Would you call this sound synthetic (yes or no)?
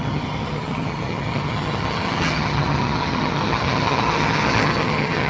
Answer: yes